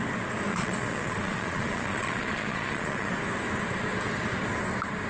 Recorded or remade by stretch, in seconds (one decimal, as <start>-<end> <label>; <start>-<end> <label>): 0.0-0.5 recorded; 0.5-3.1 remade; 3.1-5.1 recorded